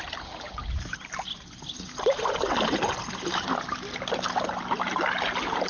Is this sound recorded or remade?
recorded